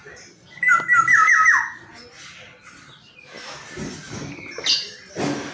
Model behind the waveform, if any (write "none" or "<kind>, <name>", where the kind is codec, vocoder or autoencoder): none